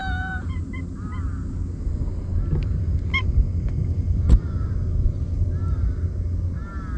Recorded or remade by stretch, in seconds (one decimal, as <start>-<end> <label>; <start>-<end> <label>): 0.0-1.6 remade; 1.6-2.6 recorded; 2.6-5.5 remade; 5.5-7.0 recorded